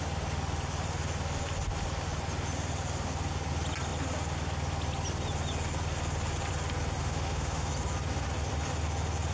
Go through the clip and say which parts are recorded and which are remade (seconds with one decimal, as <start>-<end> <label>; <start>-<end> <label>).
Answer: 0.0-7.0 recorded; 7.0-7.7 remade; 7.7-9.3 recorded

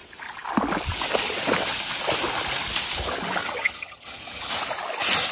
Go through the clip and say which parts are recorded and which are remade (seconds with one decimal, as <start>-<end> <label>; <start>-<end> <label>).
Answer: 0.0-3.4 recorded; 3.4-4.5 remade; 4.5-5.3 recorded

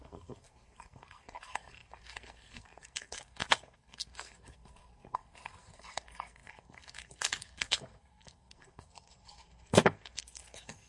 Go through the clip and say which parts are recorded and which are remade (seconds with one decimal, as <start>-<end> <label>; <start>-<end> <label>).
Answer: 0.0-10.9 remade

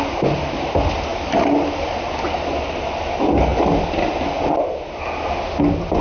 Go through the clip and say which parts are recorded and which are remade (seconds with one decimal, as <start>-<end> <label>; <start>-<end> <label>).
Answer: 0.0-6.0 recorded

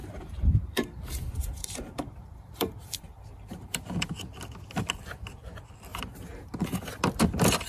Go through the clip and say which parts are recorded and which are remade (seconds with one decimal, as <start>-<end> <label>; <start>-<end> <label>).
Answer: 0.0-3.8 remade; 3.8-5.9 recorded; 5.9-6.9 remade; 6.9-7.7 recorded

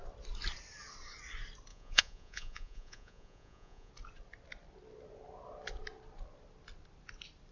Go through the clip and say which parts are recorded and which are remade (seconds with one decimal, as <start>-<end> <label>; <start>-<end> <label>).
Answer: 0.0-1.7 recorded; 1.7-3.9 remade; 3.9-7.5 recorded

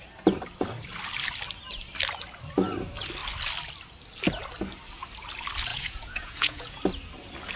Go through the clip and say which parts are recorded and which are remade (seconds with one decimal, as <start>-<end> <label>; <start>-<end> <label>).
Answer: 0.0-5.7 recorded; 5.7-6.8 remade; 6.8-7.6 recorded

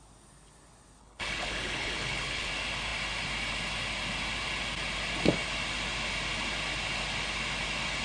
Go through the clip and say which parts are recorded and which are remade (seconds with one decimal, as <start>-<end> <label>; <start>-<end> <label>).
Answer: 0.0-1.0 recorded; 1.0-2.5 remade; 2.5-8.0 recorded